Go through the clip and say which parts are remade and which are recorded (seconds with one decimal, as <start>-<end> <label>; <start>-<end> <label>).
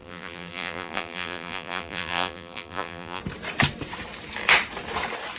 0.0-3.2 remade; 3.2-5.4 recorded